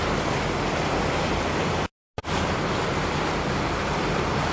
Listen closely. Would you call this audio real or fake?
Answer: real